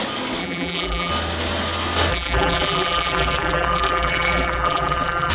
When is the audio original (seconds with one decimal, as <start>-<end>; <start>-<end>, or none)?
0.0-0.4; 1.1-2.1